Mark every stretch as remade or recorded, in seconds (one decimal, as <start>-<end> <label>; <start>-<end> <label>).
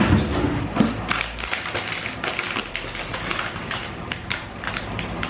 0.0-3.1 recorded; 3.1-5.3 remade